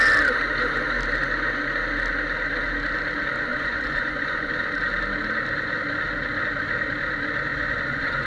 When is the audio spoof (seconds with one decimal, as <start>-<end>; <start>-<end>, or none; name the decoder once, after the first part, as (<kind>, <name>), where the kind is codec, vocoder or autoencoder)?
3.5-4.5 (vocoder, Vocos); 7.5-8.3